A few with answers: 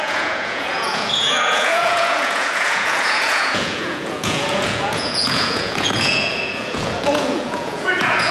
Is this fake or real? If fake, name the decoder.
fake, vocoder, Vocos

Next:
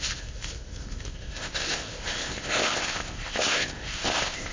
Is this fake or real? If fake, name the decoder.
fake, codec, ZipCodec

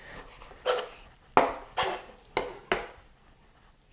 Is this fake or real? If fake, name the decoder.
real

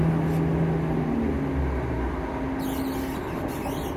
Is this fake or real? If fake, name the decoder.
real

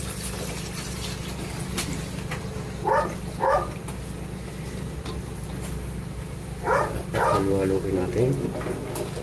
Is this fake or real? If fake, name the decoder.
real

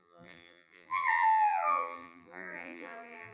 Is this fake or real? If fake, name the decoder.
fake, vocoder, BigVGAN v2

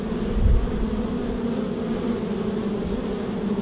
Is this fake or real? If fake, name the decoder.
real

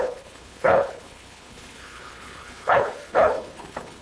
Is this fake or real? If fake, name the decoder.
fake, codec, HILCodec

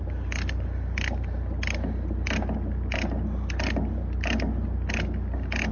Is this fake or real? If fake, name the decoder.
real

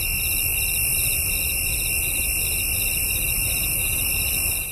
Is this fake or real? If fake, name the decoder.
real